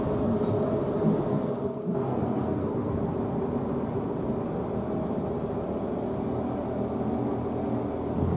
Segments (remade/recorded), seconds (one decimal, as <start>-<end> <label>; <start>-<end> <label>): 0.0-1.3 recorded; 1.3-3.1 remade; 3.1-8.4 recorded